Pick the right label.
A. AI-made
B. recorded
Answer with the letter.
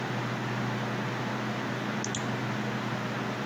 B